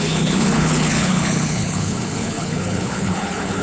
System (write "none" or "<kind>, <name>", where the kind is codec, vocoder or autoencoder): codec, HILCodec